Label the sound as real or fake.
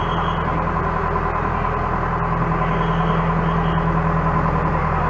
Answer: real